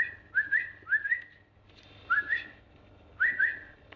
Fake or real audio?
fake